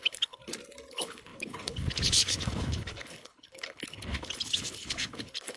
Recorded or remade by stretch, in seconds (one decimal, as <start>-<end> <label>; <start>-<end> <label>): 0.0-0.4 remade; 0.4-0.9 recorded; 0.9-5.6 remade